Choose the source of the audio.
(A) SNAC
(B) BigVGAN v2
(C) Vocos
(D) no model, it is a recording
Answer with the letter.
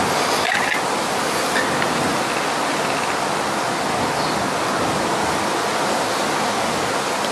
D